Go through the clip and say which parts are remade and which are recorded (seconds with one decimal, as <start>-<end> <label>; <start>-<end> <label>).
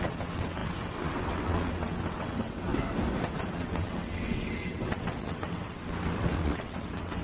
0.0-2.7 remade; 2.7-3.5 recorded; 3.5-7.2 remade